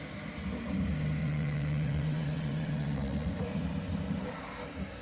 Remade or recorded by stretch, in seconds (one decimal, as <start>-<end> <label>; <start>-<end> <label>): 0.0-1.2 recorded; 1.2-3.3 remade; 3.3-5.0 recorded